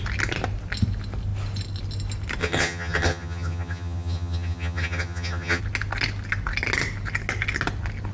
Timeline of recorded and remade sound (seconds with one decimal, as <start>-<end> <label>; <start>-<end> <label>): 0.0-2.4 recorded; 2.4-5.6 remade; 5.6-8.1 recorded